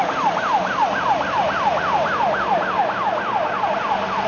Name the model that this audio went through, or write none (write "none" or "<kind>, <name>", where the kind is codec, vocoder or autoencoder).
none